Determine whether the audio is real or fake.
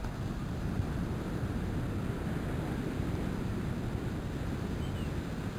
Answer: real